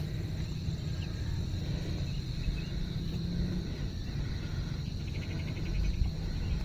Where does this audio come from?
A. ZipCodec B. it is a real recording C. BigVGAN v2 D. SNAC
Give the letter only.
B